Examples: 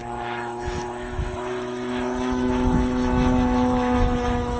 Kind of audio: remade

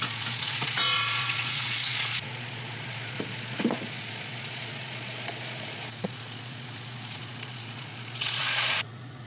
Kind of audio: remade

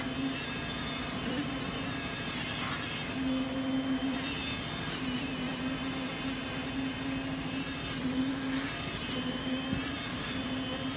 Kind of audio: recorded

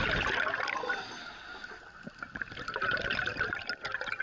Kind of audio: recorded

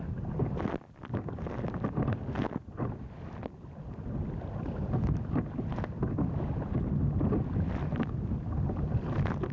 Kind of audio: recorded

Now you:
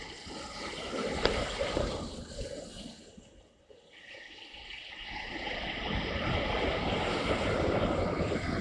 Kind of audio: recorded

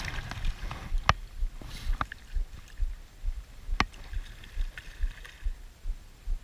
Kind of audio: recorded